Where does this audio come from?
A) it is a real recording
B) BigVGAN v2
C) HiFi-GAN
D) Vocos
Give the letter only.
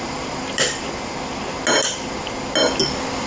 A